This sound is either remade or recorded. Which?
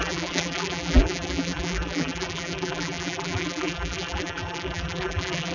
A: remade